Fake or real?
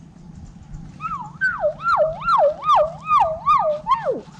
real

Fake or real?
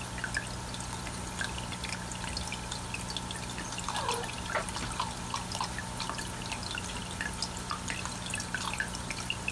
real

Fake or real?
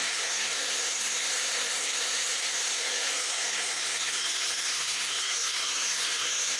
fake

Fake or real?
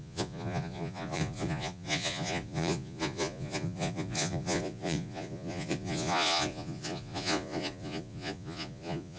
fake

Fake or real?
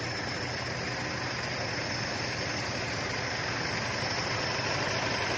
real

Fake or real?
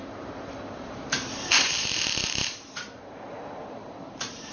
fake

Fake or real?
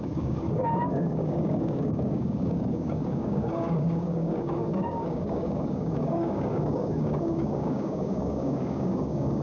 fake